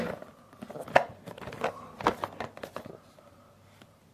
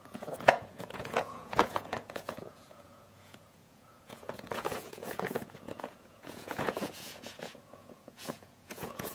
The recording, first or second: first